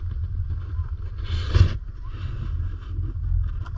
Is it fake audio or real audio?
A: real